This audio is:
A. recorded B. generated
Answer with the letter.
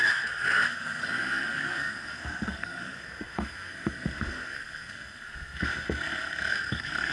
B